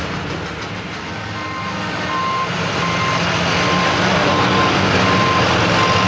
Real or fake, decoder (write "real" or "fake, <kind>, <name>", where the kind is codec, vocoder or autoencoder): real